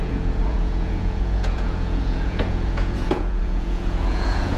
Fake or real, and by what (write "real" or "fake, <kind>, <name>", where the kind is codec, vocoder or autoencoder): fake, vocoder, Vocos